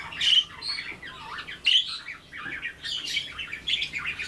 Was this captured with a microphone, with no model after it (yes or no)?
yes